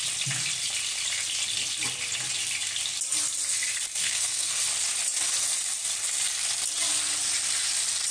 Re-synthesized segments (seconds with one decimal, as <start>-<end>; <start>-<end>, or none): 4.0-4.6